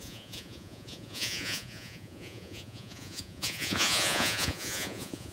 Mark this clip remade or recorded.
remade